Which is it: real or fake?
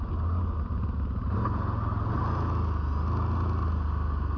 real